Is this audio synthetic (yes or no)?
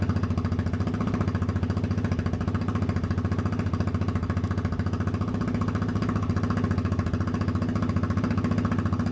no